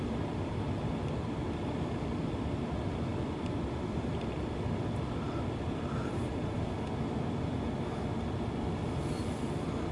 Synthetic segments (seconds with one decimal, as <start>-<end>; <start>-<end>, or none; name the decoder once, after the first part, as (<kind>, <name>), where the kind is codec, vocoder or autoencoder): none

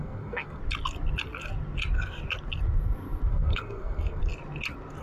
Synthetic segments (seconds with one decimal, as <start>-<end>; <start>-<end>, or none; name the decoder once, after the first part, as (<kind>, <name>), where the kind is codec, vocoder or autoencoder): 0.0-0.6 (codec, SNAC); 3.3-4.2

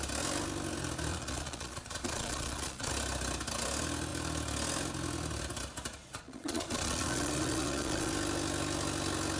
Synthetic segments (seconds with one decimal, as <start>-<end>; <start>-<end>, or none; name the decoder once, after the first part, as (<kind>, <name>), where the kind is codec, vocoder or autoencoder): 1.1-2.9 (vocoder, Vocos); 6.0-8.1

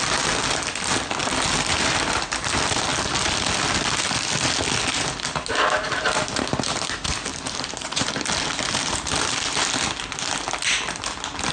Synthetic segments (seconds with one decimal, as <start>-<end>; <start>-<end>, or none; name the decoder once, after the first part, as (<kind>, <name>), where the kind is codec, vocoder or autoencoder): 7.3-8.1 (vocoder, BigVGAN v2)

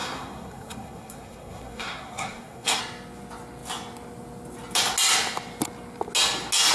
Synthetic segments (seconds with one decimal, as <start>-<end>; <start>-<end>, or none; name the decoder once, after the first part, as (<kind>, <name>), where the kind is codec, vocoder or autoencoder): 0.0-2.8 (codec, SNAC)

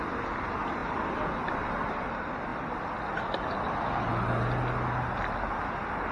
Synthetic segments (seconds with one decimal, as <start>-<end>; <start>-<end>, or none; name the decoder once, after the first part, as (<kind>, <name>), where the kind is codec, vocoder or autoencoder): none